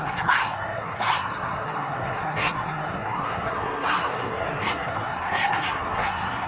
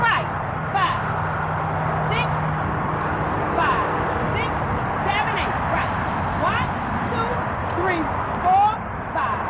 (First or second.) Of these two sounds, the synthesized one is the first